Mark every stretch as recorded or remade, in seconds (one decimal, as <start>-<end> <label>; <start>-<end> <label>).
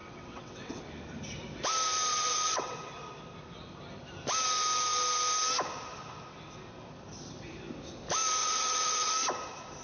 0.0-0.8 remade; 0.8-2.1 recorded; 2.1-2.8 remade; 2.8-8.4 recorded; 8.4-9.1 remade; 9.1-9.8 recorded